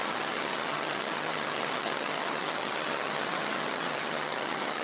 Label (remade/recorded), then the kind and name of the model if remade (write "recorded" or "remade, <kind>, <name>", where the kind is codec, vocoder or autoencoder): remade, vocoder, HiFi-GAN